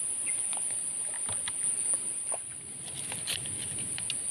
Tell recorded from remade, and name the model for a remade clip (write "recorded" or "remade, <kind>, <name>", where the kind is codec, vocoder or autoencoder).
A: recorded